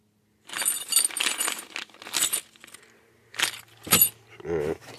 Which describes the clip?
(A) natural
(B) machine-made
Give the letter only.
A